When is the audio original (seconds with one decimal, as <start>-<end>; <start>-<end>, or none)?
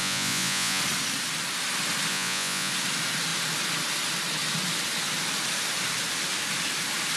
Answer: 0.8-2.1; 2.7-7.2